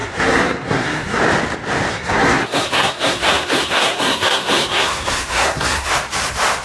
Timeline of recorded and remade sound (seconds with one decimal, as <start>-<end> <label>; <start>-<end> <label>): 0.0-1.2 remade; 1.2-1.9 recorded; 1.9-5.9 remade; 5.9-6.6 recorded